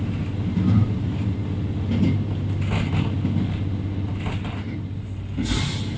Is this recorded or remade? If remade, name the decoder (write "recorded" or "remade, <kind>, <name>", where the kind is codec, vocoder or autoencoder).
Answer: recorded